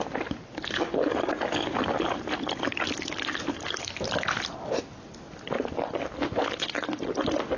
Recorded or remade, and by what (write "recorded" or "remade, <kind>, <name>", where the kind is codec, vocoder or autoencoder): recorded